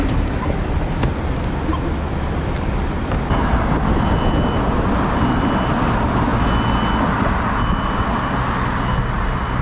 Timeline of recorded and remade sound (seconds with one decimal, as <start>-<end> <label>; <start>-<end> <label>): 0.0-9.6 recorded